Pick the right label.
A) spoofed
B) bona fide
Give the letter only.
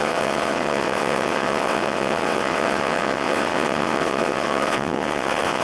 A